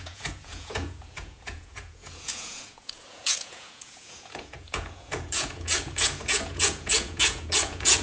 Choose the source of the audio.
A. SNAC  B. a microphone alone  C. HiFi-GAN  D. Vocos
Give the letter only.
D